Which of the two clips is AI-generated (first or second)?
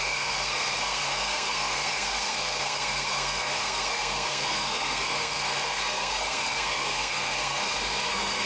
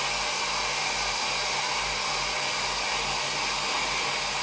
first